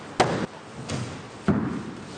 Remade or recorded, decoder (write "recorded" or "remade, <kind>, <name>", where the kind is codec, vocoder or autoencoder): recorded